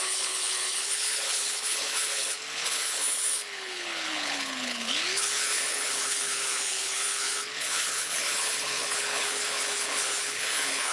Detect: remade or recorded remade